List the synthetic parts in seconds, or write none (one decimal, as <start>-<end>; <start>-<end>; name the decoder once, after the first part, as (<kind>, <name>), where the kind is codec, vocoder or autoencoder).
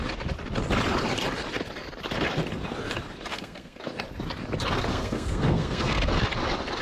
3.3-3.8 (codec, SNAC); 4.9-6.1